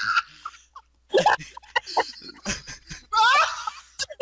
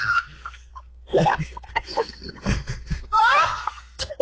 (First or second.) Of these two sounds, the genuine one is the first